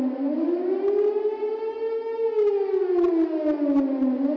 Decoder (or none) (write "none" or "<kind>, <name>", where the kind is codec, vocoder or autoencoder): none